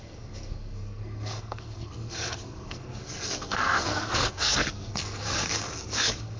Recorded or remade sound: remade